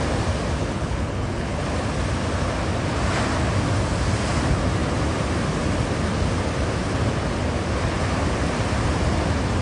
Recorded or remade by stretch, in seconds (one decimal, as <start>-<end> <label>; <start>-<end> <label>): 0.0-0.6 recorded; 0.6-1.6 remade; 1.6-9.6 recorded